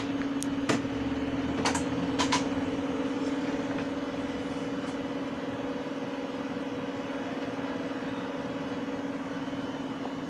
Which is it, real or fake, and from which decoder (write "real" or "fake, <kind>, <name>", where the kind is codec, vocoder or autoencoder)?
real